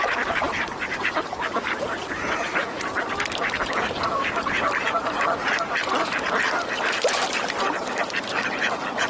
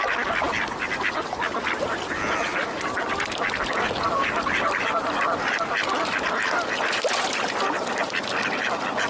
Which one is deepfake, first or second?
first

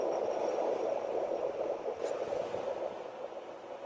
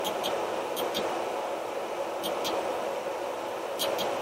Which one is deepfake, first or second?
first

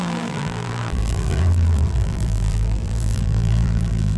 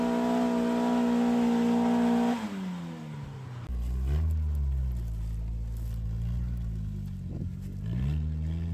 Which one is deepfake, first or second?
first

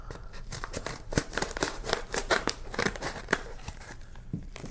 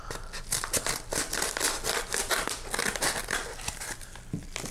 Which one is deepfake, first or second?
first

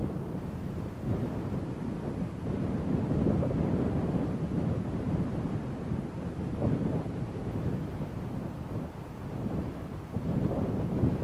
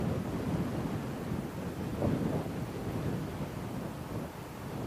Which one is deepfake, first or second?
first